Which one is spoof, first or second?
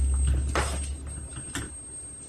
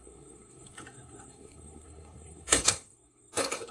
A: second